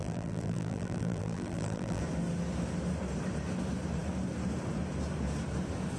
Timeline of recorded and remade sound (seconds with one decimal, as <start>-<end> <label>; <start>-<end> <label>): 0.0-2.0 remade; 2.0-6.0 recorded